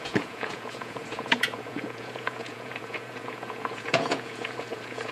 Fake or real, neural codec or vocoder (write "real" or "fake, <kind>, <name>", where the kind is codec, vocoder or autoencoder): fake, vocoder, Vocos